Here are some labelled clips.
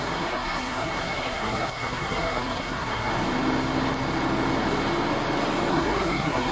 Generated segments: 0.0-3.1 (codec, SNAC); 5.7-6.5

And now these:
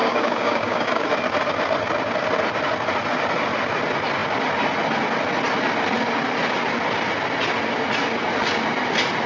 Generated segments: 0.0-1.1 (codec, DAC)

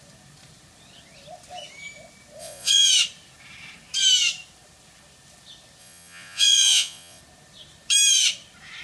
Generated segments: 2.4-2.9 (vocoder, Vocos); 5.8-7.2

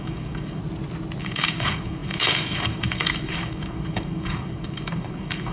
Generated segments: 0.0-0.6 (codec, DAC); 1.2-5.5

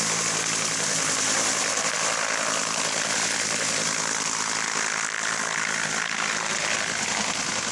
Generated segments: 2.6-7.1 (vocoder, BigVGAN v2)

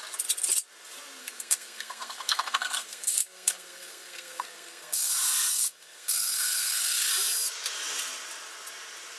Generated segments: 1.2-5.1 (codec, SNAC); 5.5-7.1

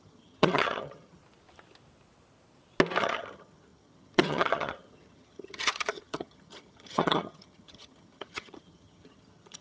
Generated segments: 0.0-1.2 (vocoder, HiFi-GAN); 3.0-9.6